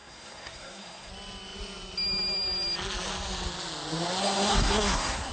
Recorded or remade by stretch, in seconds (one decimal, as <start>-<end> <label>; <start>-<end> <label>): 0.0-1.1 remade; 1.1-4.2 recorded; 4.2-5.3 remade